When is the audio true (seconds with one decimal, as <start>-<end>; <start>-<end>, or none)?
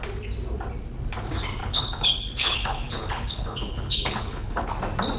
0.0-1.6; 4.7-5.2